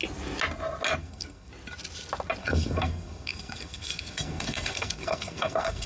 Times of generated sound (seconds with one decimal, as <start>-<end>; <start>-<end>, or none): 1.0-1.5; 2.4-5.9